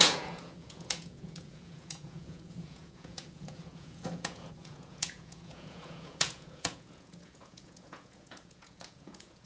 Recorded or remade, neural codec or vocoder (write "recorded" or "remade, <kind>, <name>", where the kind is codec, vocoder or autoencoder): remade, vocoder, Vocos